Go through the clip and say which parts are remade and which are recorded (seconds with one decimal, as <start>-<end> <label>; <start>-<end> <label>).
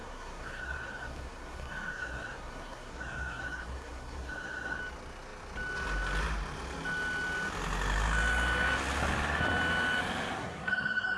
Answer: 0.0-4.8 remade; 4.8-10.4 recorded; 10.4-11.2 remade